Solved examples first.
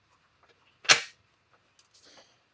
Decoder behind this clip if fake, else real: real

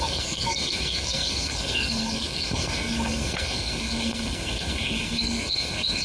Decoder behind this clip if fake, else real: fake, codec, SNAC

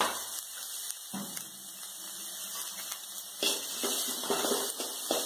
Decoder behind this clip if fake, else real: real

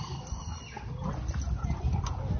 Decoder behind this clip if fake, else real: real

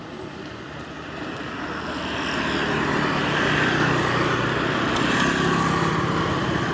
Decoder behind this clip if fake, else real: real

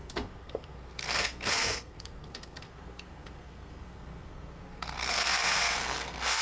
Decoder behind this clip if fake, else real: fake, codec, SNAC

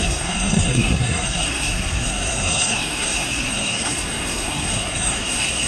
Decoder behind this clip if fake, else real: fake, codec, SNAC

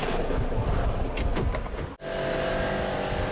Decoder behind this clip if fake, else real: real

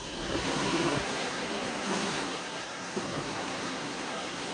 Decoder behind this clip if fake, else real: fake, codec, SNAC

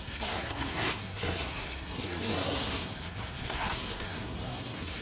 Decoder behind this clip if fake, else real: fake, codec, SNAC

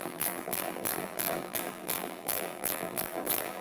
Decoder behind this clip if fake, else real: fake, vocoder, BigVGAN v2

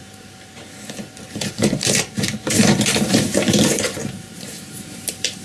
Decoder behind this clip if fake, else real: fake, vocoder, BigVGAN v2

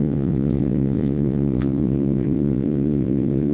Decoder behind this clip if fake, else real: fake, vocoder, WaveNeXt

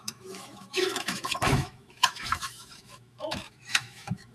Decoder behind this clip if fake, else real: fake, autoencoder, DAC-VAE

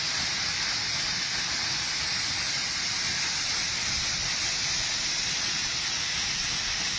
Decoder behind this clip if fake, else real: real